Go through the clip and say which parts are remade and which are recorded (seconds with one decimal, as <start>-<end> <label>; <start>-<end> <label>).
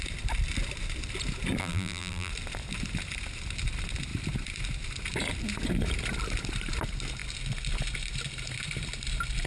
0.0-1.6 recorded; 1.6-2.3 remade; 2.3-9.5 recorded